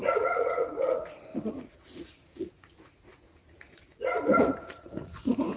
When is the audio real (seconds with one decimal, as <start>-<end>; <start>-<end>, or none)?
none